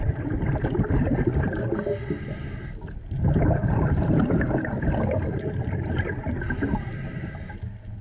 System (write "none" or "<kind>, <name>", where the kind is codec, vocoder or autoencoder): none